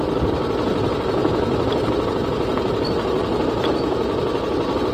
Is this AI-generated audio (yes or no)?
no